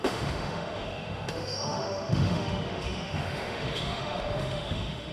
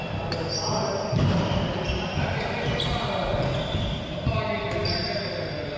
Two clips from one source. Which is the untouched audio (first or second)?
second